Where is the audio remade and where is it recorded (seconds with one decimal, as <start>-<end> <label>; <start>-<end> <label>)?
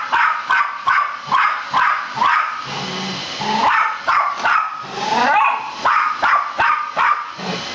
0.0-7.7 recorded